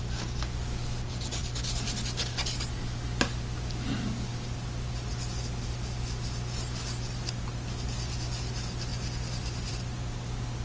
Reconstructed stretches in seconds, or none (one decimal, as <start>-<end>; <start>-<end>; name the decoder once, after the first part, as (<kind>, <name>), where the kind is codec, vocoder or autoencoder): none

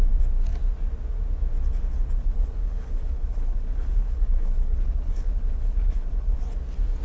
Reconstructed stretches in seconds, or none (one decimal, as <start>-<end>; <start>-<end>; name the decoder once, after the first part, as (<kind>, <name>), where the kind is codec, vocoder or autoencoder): 2.2-6.4 (codec, HILCodec)

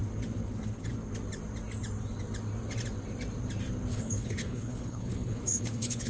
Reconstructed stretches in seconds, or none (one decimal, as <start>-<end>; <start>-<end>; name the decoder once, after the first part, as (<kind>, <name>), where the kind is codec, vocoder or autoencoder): 3.9-6.1 (codec, HILCodec)

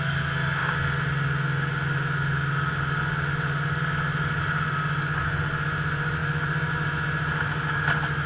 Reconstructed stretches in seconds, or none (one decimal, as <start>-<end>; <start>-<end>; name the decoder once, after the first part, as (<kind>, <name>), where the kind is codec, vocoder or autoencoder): none